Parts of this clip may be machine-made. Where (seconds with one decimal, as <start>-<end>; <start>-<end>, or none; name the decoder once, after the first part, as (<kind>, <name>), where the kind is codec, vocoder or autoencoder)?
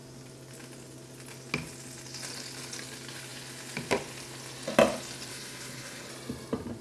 5.3-6.1 (codec, HILCodec)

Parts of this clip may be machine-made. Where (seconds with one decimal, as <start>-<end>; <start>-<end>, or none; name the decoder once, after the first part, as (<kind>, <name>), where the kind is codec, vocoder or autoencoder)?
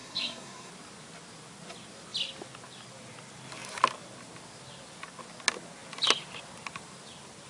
0.0-0.7 (codec, SNAC)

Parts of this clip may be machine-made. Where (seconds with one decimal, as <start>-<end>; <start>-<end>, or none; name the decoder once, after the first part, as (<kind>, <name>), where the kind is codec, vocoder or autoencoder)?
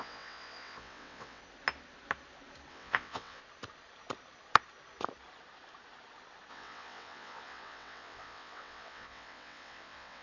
0.0-1.4 (vocoder, WaveNeXt); 2.7-3.4; 6.5-10.2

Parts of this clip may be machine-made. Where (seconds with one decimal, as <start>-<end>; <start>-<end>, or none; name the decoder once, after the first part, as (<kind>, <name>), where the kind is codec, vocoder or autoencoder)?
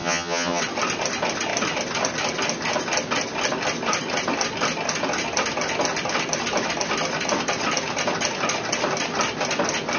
0.0-0.6 (vocoder, HiFi-GAN)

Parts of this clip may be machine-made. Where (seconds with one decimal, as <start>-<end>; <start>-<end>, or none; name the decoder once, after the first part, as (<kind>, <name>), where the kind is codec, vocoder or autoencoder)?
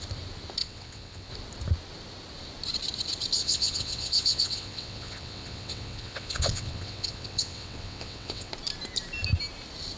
0.6-1.3 (vocoder, WaveNeXt); 3.4-8.5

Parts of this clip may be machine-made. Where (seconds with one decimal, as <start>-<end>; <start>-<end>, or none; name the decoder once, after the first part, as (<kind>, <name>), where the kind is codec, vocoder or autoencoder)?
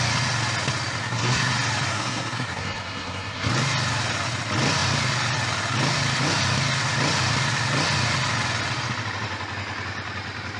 1.0-1.5 (codec, SNAC); 1.9-3.5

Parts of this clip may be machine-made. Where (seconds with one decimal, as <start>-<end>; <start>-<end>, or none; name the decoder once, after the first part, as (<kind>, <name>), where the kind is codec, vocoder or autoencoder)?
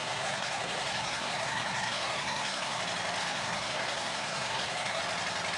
0.0-2.8 (codec, SNAC); 3.2-5.0